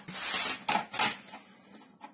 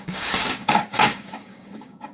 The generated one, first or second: second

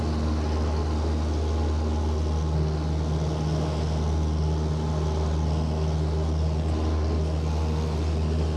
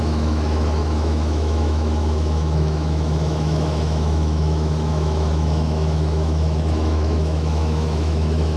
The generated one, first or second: second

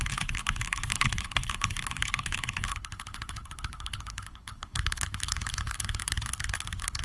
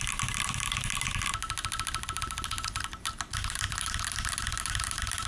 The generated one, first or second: first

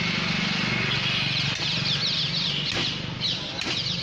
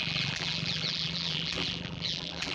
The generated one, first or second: second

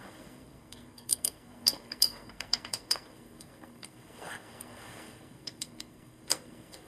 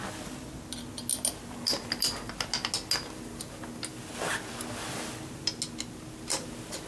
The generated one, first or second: first